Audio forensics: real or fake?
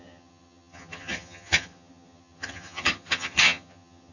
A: fake